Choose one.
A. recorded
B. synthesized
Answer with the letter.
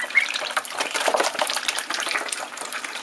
B